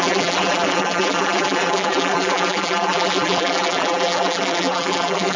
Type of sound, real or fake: fake